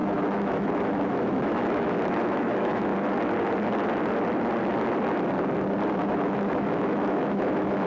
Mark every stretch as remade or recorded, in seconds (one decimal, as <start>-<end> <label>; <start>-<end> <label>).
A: 0.0-2.9 remade; 2.9-5.9 recorded; 5.9-7.9 remade

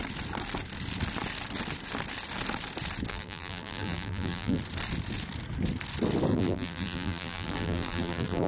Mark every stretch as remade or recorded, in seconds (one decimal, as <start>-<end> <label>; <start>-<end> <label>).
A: 0.0-3.1 recorded; 3.1-4.6 remade; 4.6-6.3 recorded; 6.3-8.5 remade

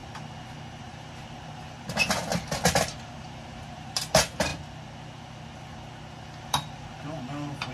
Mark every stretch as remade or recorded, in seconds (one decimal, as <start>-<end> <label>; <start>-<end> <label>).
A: 0.0-0.8 recorded; 0.8-2.3 remade; 2.3-2.8 recorded; 2.8-4.5 remade; 4.5-6.4 recorded; 6.4-7.7 remade

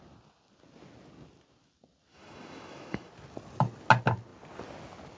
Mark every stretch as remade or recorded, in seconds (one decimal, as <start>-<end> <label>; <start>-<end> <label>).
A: 0.0-2.1 recorded; 2.1-3.1 remade; 3.1-5.2 recorded

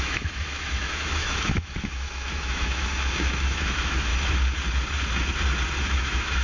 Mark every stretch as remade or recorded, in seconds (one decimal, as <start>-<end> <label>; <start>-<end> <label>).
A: 0.0-4.1 remade; 4.1-5.8 recorded; 5.8-6.4 remade

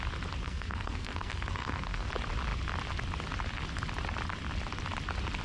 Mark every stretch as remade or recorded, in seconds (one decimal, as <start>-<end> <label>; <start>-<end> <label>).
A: 0.0-0.4 recorded; 0.4-2.1 remade; 2.1-5.4 recorded